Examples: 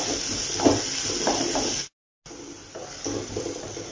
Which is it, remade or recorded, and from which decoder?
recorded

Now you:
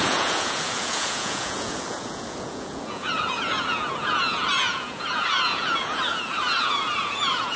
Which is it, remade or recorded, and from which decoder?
remade, vocoder, Vocos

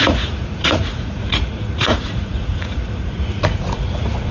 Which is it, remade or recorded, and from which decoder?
remade, vocoder, Vocos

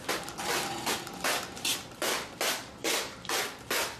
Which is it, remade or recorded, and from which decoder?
remade, vocoder, BigVGAN v2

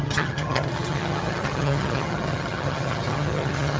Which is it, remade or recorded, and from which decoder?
remade, vocoder, HiFi-GAN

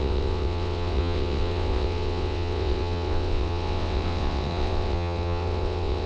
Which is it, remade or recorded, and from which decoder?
remade, vocoder, WaveNeXt